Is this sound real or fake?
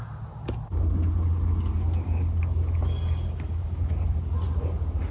real